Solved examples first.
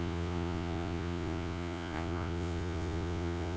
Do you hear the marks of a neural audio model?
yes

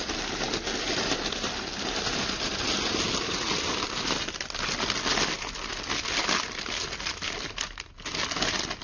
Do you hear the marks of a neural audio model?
no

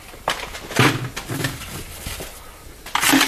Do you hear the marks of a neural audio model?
no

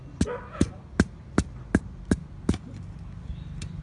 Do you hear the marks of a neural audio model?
no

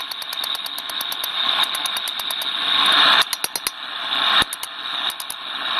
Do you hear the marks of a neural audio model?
no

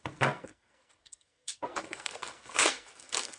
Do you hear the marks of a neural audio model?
yes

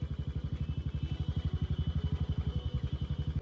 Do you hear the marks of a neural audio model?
no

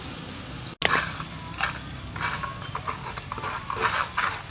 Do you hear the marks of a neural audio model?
no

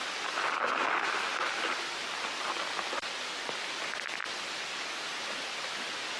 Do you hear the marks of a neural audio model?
no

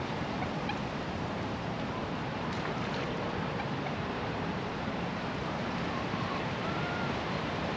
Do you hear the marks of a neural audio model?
yes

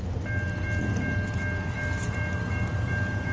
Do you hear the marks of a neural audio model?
no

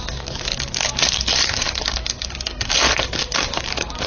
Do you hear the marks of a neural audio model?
yes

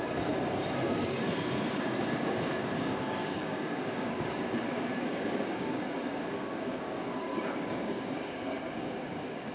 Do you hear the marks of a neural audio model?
yes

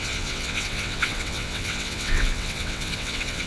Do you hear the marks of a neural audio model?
yes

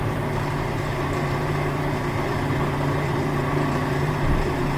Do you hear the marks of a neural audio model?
yes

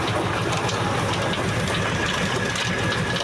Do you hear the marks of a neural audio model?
no